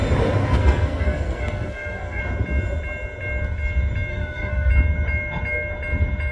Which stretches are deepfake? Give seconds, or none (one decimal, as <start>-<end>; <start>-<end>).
0.4-2.2; 4.1-4.7